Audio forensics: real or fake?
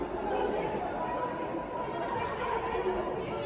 real